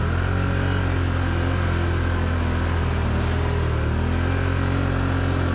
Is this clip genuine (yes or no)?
yes